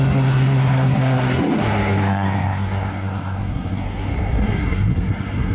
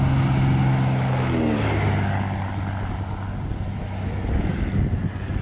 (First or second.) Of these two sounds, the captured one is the second